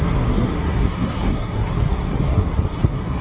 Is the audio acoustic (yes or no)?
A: no